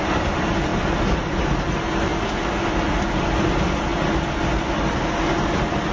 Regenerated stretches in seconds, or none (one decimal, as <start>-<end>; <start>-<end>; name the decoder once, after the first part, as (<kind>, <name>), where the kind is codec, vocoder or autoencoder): none